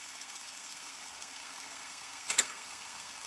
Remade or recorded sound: remade